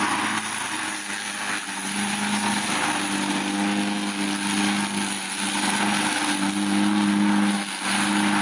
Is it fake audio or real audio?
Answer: real